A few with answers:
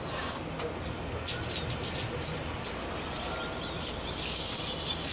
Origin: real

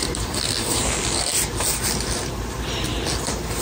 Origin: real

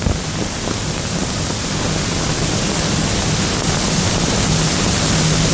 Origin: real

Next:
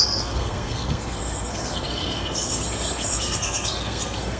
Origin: fake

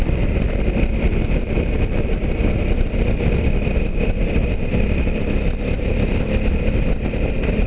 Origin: fake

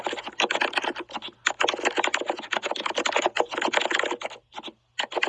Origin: real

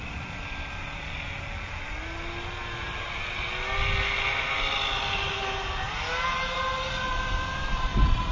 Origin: real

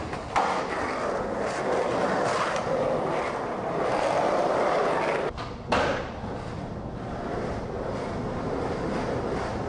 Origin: real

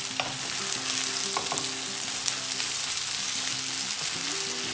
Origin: real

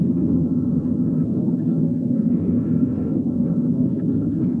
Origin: fake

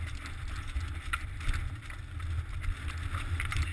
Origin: real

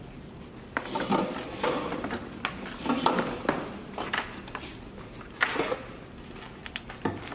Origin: real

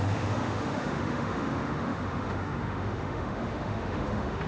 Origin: fake